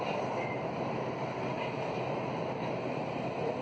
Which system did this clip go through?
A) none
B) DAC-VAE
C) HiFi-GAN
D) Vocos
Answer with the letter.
A